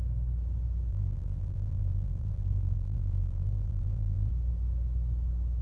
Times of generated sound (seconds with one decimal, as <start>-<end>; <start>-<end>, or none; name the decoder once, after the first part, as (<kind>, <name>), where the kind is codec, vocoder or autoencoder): 0.9-4.3 (vocoder, BigVGAN v2)